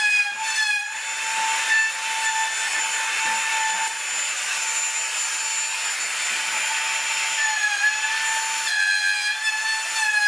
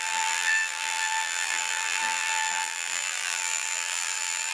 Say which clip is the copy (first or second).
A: second